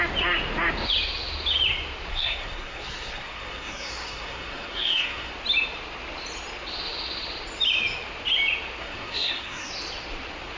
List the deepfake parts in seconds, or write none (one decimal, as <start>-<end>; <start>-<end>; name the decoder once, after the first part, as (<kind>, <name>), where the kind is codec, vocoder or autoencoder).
2.1-5.3 (codec, SNAC); 8.8-9.7